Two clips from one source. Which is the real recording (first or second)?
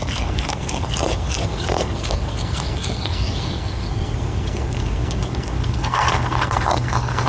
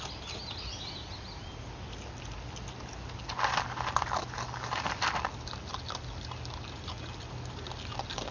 second